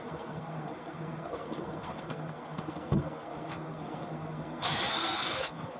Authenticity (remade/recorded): remade